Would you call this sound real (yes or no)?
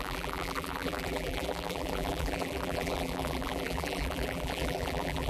no